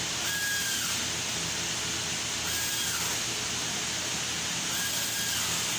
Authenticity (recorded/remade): recorded